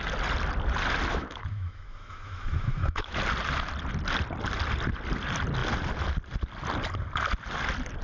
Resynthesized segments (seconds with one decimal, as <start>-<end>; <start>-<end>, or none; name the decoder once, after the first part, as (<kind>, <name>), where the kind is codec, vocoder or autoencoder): 1.1-3.2 (autoencoder, DAC-VAE)